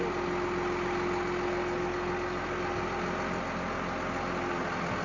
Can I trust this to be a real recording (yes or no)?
yes